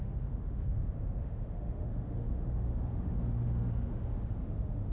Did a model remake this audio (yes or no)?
yes